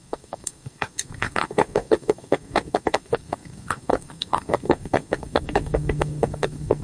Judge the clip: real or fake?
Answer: fake